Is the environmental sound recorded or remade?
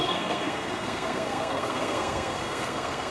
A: remade